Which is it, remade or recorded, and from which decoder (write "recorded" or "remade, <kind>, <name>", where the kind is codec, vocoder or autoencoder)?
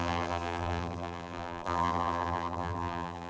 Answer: remade, vocoder, BigVGAN v2